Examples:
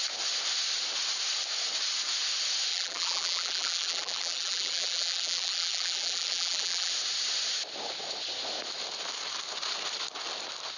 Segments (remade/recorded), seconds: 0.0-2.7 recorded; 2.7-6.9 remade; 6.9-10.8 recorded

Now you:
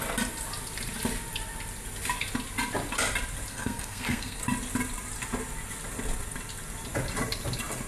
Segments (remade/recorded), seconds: 0.0-3.5 recorded; 3.5-4.4 remade; 4.4-7.9 recorded

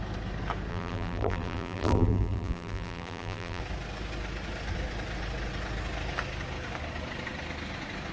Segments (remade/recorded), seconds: 0.0-0.7 recorded; 0.7-3.6 remade; 3.6-8.1 recorded

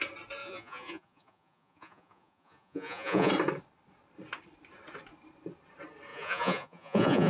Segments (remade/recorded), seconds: 0.0-0.4 recorded; 0.4-3.3 remade; 3.3-6.1 recorded; 6.1-7.3 remade

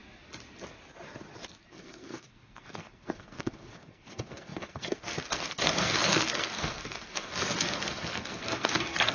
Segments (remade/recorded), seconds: 0.0-1.7 recorded; 1.7-9.1 remade